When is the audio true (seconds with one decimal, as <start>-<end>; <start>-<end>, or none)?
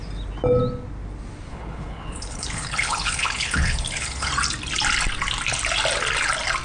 0.0-1.5; 4.3-6.6